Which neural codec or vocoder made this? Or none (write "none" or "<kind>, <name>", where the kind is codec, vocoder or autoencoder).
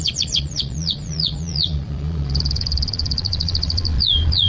vocoder, Vocos